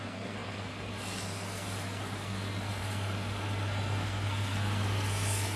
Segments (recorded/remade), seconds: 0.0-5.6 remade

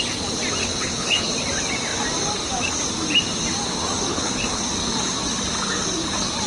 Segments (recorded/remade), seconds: 0.0-0.6 recorded; 0.6-1.3 remade; 1.3-4.1 recorded; 4.1-4.6 remade; 4.6-6.5 recorded

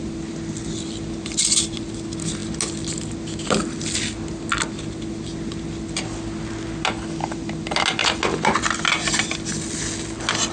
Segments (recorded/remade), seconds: 0.0-10.5 recorded